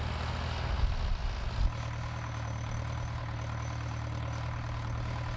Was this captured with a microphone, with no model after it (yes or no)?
yes